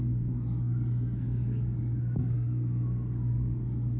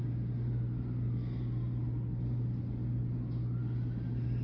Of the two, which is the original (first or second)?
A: second